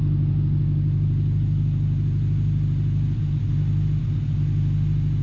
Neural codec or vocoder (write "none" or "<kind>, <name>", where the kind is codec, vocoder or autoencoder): none